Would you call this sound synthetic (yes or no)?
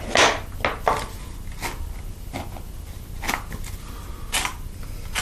no